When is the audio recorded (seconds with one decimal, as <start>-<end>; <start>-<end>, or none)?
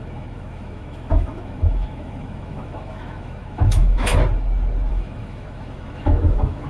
4.1-4.9